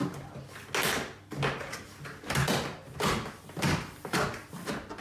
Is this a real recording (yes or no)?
yes